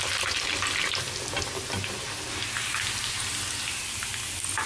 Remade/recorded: recorded